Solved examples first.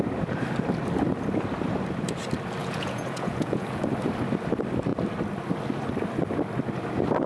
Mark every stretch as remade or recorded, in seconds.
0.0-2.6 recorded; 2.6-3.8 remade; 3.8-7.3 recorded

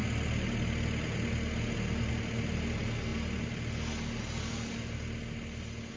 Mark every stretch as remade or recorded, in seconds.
0.0-6.0 recorded